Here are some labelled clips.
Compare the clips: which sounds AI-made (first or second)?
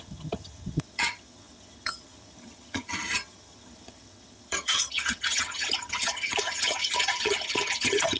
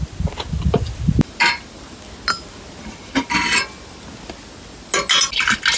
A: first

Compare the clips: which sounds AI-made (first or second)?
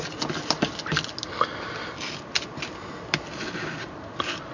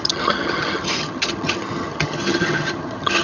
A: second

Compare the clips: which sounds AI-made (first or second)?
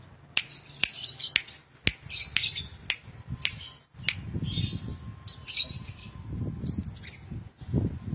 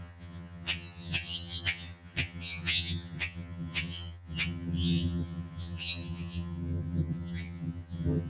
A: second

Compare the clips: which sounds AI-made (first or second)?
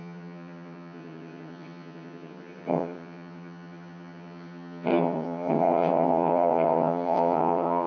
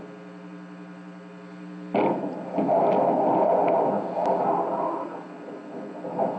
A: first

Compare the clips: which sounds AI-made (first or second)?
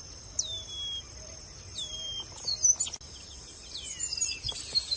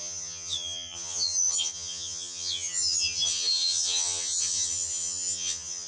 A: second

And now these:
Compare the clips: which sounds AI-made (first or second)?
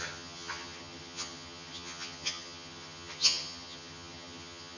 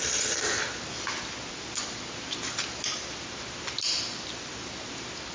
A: first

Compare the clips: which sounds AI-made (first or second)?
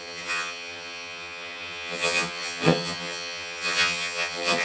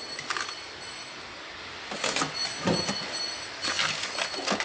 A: first